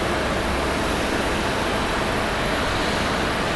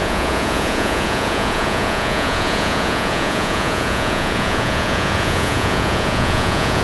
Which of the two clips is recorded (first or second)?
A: first